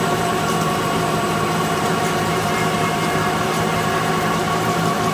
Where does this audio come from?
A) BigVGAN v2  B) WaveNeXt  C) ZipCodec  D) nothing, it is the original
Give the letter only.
A